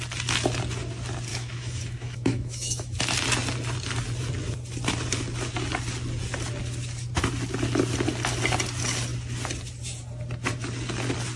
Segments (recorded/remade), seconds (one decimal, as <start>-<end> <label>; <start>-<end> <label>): 0.0-1.3 recorded; 1.3-3.0 remade; 3.0-11.4 recorded